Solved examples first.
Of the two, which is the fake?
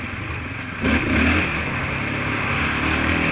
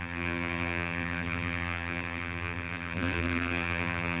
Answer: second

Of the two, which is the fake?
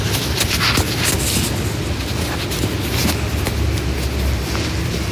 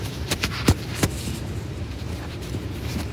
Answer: second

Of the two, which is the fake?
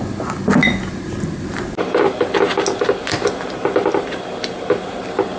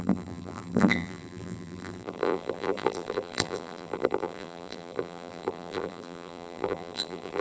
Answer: second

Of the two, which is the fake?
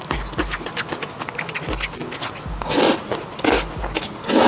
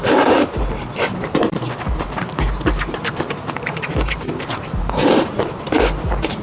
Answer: second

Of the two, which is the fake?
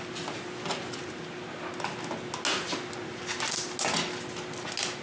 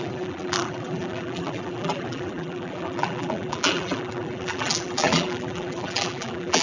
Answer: second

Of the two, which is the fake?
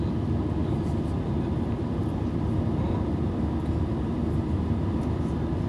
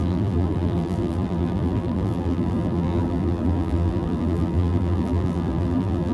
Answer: second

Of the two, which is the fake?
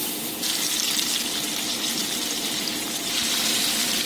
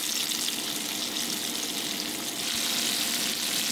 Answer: first